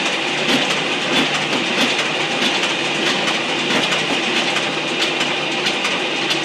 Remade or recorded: recorded